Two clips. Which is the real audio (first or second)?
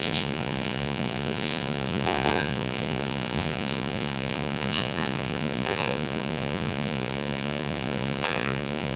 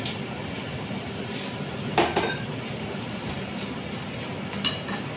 second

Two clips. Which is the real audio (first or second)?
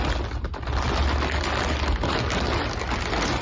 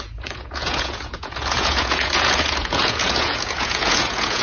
first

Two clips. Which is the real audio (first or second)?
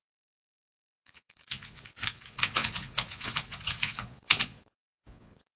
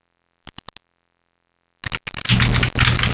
second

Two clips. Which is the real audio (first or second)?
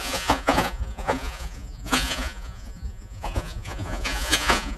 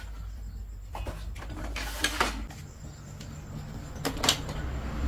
second